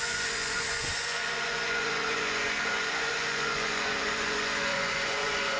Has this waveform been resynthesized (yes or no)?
yes